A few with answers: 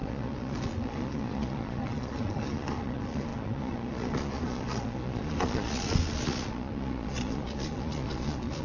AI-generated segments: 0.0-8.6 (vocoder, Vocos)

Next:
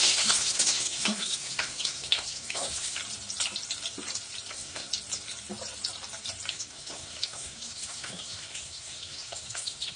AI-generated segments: 0.0-3.0 (codec, SNAC); 4.5-4.9; 6.5-10.0

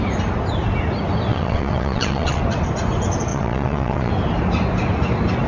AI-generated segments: 1.3-2.4 (vocoder, WaveNeXt); 3.3-4.1

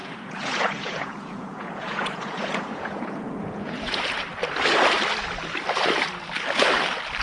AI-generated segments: 0.0-4.0 (vocoder, Vocos)